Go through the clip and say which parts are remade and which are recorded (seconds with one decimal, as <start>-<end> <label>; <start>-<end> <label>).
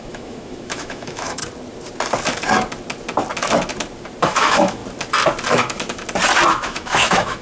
0.0-1.4 remade; 1.4-4.2 recorded; 4.2-4.8 remade; 4.8-5.5 recorded; 5.5-6.0 remade; 6.0-6.5 recorded; 6.5-7.4 remade